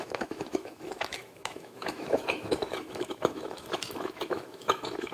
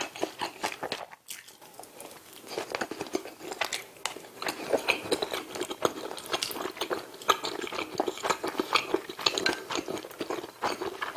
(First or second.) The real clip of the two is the second